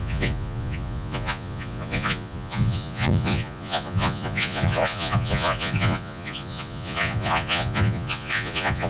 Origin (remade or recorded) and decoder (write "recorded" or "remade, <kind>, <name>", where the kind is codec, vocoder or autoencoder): remade, vocoder, Vocos